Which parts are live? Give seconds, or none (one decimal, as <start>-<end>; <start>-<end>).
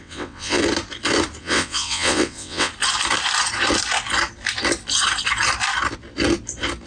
0.6-1.4; 2.7-6.9